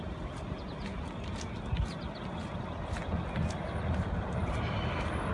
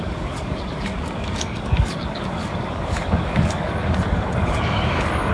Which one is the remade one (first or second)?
second